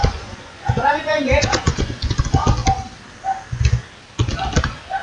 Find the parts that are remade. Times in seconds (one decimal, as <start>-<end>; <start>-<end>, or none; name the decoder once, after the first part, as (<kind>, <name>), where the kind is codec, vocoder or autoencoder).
0.0-2.2 (vocoder, Vocos)